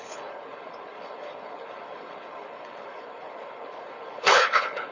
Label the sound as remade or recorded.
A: remade